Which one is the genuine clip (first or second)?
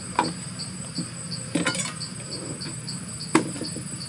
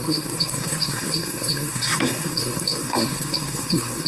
first